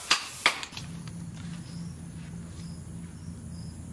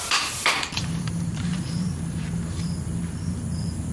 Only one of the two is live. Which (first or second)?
first